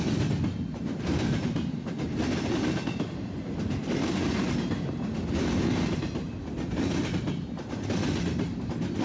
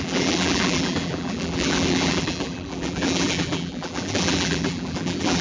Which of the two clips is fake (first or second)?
second